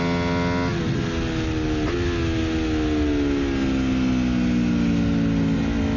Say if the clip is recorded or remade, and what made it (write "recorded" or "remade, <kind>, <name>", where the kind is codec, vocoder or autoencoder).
recorded